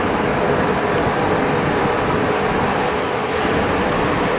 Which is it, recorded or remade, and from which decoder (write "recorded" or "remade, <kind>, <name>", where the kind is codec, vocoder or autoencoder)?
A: recorded